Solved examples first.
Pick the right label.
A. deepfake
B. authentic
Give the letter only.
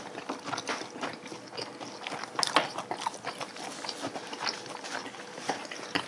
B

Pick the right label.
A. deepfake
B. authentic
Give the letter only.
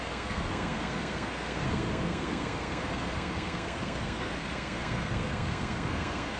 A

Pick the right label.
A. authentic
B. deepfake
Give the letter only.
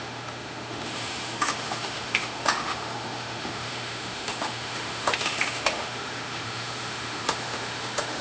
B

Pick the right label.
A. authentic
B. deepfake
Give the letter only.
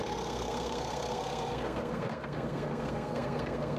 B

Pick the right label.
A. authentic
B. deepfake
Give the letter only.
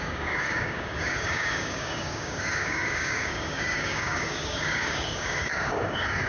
B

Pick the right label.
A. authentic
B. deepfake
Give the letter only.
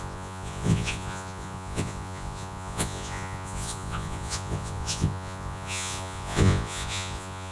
B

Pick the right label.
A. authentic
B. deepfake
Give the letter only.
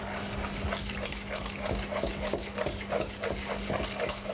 B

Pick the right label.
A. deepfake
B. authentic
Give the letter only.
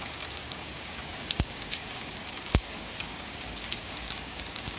A